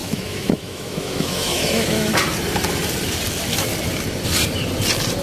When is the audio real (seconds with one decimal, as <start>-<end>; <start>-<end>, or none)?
2.1-5.2